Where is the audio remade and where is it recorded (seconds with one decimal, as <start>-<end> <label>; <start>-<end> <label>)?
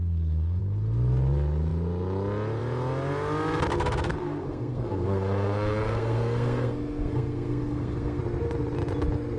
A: 0.0-0.6 remade; 0.6-3.7 recorded; 3.7-8.2 remade; 8.2-9.4 recorded